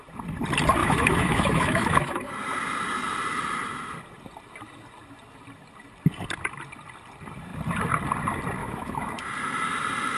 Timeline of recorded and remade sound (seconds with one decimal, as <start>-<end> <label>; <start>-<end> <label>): 0.0-0.8 recorded; 0.8-2.3 remade; 2.3-8.6 recorded; 8.6-9.2 remade; 9.2-10.2 recorded